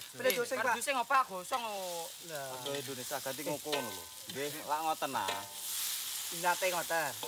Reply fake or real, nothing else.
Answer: real